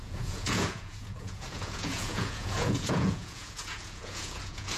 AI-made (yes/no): yes